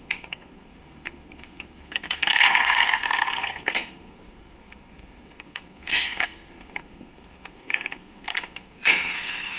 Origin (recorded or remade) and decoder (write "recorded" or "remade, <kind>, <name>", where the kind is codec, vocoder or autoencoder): remade, codec, SNAC